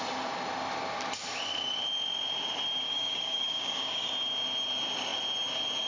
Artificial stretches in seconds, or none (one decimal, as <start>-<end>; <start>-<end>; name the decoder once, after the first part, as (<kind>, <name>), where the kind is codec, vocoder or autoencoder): 2.8-4.1 (codec, DAC)